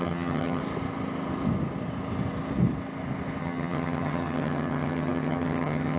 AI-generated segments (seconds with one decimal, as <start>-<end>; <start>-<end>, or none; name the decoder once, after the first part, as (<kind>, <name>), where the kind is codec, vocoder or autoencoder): 0.0-0.6 (vocoder, HiFi-GAN); 3.4-6.0

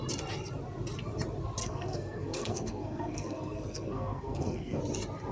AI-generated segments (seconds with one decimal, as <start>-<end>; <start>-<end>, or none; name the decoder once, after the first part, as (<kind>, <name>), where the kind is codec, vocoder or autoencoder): 1.6-4.8 (codec, SNAC)

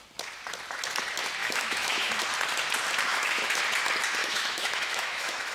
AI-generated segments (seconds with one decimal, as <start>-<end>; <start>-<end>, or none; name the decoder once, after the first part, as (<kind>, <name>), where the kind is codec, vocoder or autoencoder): 1.4-2.1 (autoencoder, DAC-VAE); 3.1-3.6; 4.2-5.5

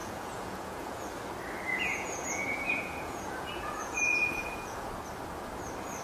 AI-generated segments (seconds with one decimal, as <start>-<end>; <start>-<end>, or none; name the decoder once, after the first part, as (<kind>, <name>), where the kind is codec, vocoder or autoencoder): 0.0-1.0 (vocoder, Vocos); 1.7-4.9